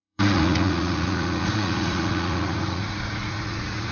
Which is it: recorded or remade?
remade